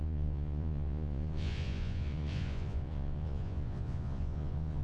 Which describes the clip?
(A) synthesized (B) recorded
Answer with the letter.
A